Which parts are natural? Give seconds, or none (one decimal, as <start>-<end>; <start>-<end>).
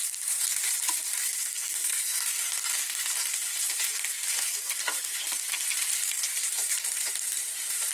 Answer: 0.0-1.5; 2.2-7.9